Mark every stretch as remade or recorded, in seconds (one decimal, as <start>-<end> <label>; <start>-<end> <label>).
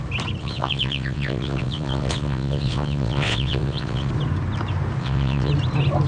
0.0-0.4 recorded; 0.4-4.1 remade; 4.1-5.0 recorded; 5.0-5.5 remade; 5.5-6.1 recorded